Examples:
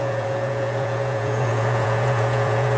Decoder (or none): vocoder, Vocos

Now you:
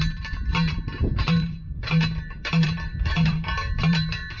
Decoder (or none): vocoder, BigVGAN v2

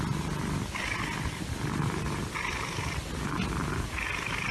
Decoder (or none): none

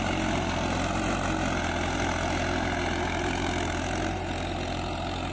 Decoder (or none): none